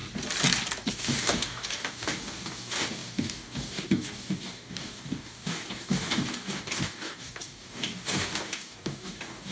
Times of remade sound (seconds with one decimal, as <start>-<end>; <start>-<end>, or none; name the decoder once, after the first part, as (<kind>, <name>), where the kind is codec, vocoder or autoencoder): 0.9-9.5 (codec, DAC)